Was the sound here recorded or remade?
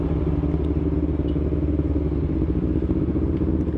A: recorded